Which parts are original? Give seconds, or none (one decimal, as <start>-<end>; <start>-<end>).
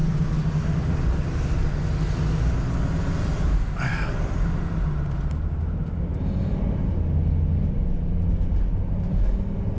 0.0-3.5; 4.1-9.8